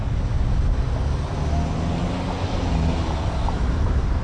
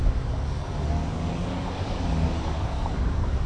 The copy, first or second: second